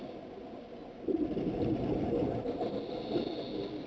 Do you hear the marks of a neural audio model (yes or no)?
no